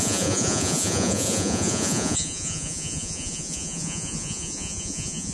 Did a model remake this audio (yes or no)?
yes